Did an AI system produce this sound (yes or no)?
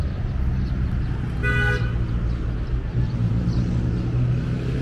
no